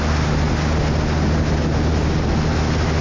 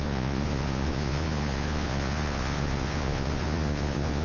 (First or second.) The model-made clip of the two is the second